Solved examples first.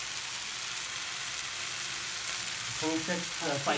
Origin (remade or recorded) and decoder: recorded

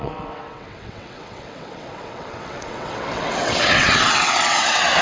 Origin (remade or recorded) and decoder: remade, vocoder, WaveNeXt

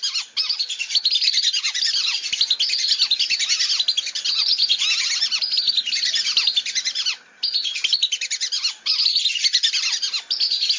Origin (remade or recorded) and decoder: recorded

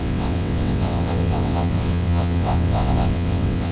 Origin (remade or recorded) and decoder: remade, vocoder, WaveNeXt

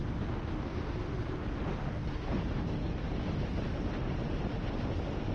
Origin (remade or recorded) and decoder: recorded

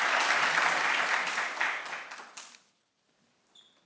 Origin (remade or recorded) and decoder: recorded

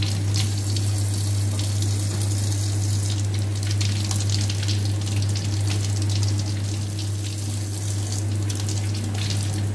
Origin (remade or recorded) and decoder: recorded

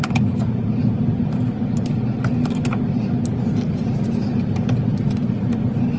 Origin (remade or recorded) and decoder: recorded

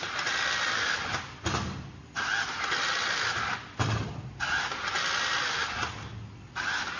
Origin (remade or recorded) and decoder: recorded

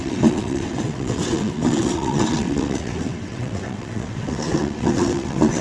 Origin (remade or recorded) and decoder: remade, vocoder, WaveNeXt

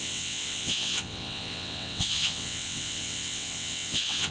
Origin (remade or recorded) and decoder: remade, vocoder, WaveNeXt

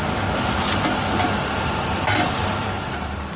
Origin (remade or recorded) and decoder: recorded